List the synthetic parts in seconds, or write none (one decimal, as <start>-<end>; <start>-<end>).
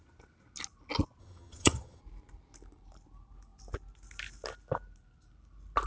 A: 1.2-2.0